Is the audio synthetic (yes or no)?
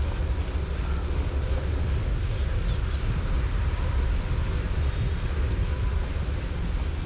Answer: no